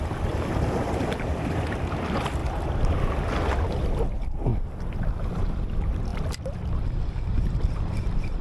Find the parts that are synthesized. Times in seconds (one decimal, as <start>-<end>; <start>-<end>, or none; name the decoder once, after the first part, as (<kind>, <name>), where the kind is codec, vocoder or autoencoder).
0.0-2.4 (vocoder, BigVGAN v2); 3.3-4.5; 5.1-6.1; 6.7-8.4